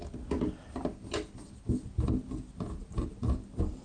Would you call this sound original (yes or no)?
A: yes